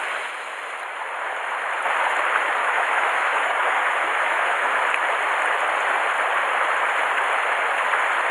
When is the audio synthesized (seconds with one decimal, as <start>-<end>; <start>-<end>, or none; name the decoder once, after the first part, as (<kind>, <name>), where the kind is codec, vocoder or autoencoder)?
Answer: 2.6-4.8 (autoencoder, DAC-VAE)